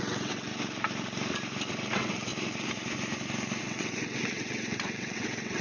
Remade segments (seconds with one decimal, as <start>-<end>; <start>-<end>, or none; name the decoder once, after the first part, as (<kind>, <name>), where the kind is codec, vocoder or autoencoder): 0.0-0.5 (vocoder, WaveNeXt); 1.7-2.3; 3.6-5.6